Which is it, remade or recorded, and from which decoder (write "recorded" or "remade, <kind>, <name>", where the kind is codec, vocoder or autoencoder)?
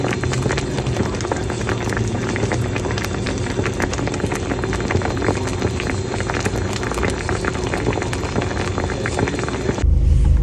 recorded